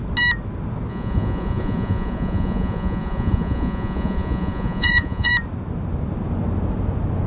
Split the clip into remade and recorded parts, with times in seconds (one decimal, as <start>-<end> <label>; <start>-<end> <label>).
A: 0.0-0.9 recorded; 0.9-5.3 remade; 5.3-7.3 recorded